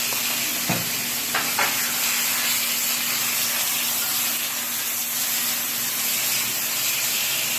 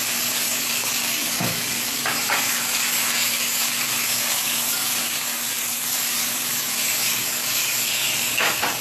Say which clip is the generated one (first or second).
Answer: second